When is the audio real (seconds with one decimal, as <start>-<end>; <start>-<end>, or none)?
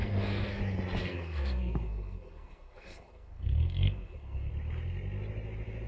0.6-1.0; 4.5-5.9